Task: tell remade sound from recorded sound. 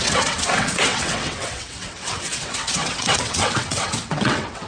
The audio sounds remade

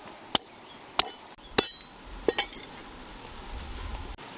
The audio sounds recorded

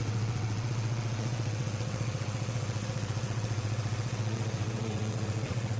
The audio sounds remade